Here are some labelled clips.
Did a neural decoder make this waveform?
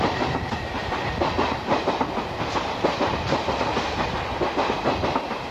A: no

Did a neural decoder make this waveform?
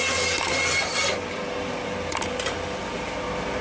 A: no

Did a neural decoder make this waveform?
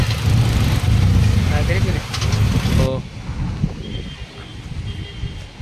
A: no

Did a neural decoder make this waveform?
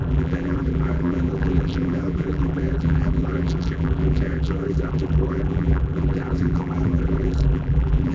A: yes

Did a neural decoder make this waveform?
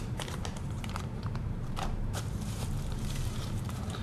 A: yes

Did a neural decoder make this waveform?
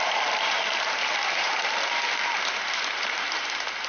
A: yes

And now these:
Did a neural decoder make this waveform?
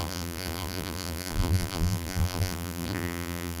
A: yes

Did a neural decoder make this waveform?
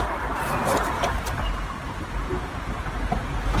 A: no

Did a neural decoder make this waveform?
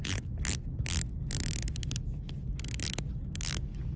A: no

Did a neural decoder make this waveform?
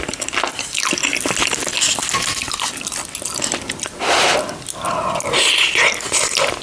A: no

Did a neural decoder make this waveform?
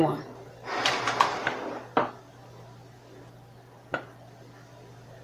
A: no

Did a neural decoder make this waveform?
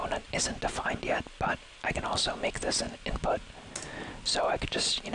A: no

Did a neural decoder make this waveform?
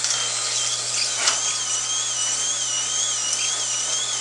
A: no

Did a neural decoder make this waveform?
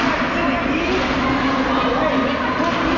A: no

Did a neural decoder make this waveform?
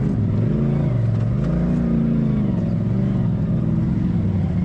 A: no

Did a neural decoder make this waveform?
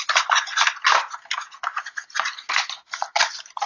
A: yes